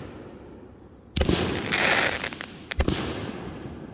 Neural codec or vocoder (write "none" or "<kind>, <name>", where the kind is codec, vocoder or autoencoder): none